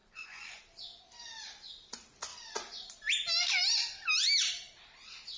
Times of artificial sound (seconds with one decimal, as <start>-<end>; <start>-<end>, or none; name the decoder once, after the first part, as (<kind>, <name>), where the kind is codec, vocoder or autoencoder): 0.0-0.6 (vocoder, Vocos)